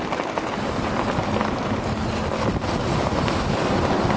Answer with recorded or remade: recorded